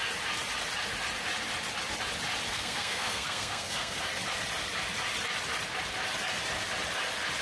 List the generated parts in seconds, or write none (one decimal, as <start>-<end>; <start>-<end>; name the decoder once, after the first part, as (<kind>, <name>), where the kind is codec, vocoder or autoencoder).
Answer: 2.5-4.0 (codec, SNAC)